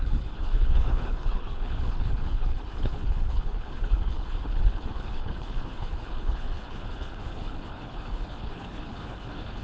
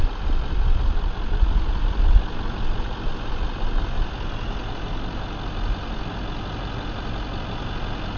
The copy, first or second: first